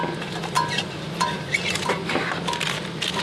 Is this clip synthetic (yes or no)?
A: no